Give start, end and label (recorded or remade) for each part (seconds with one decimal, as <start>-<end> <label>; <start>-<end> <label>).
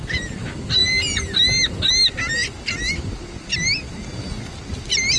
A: 0.0-5.2 recorded